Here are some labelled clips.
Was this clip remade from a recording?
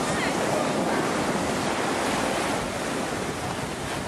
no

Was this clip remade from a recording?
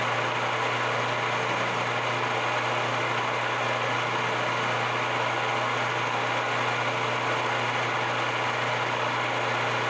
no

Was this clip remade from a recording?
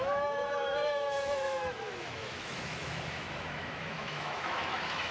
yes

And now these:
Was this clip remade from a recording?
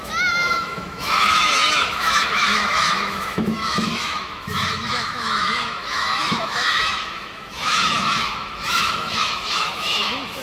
yes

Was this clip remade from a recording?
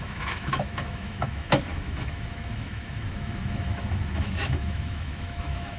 yes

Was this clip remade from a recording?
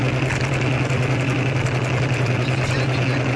no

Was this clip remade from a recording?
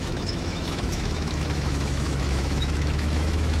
yes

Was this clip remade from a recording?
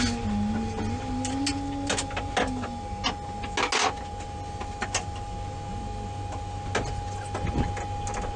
no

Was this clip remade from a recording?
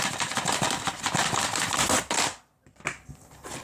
no